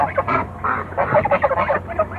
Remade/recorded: remade